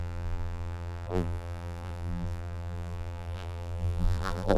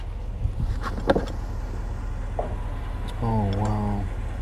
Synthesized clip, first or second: first